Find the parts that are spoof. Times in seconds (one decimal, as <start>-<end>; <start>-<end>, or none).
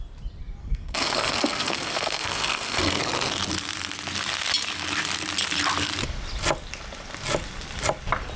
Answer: 0.6-3.0